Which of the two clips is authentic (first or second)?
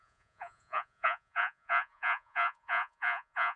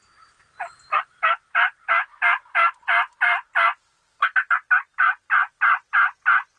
second